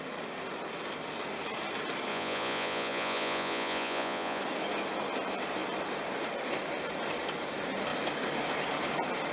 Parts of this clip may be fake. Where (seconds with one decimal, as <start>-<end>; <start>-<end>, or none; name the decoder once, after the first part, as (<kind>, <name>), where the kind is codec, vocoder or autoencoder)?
2.1-4.4 (vocoder, Vocos)

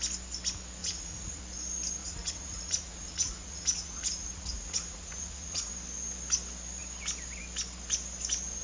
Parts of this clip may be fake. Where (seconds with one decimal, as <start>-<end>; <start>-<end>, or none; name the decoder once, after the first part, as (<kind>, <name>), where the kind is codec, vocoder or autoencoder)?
0.8-1.4 (vocoder, Vocos); 2.0-5.7

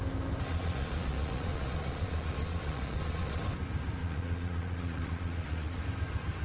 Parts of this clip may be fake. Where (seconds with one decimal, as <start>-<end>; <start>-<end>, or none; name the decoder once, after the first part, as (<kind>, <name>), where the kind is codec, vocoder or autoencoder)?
0.5-3.4 (vocoder, Vocos); 4.0-5.8

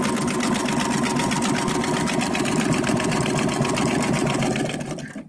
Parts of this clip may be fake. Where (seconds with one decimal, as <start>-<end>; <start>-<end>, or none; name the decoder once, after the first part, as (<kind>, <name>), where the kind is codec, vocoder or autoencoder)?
none